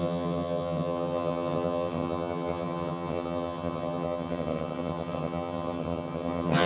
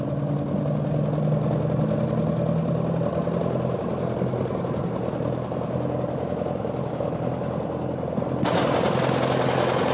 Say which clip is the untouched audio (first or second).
second